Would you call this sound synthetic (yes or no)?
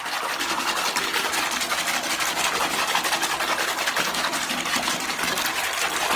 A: no